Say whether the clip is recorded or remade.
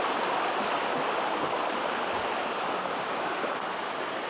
recorded